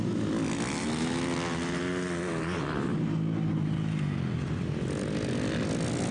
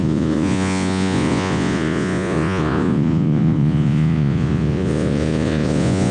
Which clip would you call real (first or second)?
first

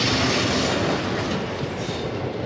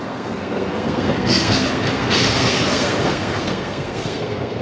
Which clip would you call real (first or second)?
first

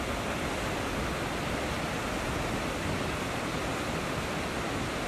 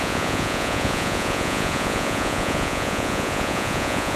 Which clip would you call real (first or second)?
first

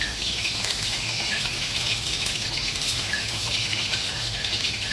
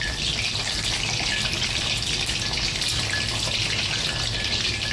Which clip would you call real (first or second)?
second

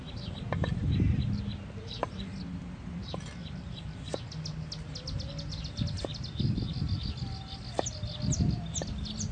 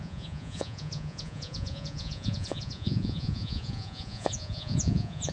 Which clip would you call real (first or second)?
first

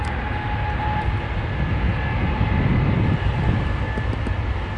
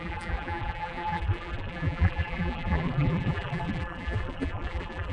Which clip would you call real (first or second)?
first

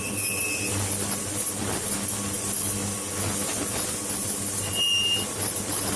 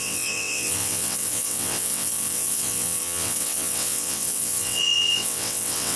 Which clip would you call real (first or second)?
first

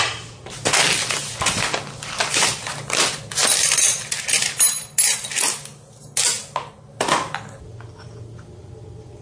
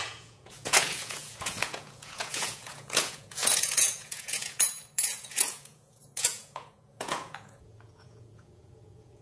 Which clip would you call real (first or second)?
first